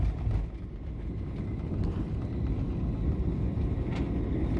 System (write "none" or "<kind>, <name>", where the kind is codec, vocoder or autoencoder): none